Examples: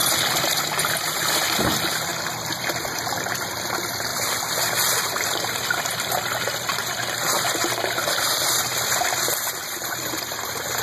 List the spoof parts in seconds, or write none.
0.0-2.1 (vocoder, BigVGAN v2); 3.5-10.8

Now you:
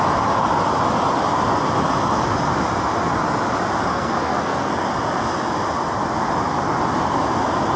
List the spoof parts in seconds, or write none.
3.9-4.7 (codec, SNAC)